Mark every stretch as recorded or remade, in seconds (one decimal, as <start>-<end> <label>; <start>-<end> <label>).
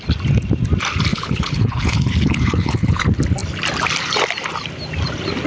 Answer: 0.0-1.1 recorded; 1.1-3.0 remade; 3.0-5.5 recorded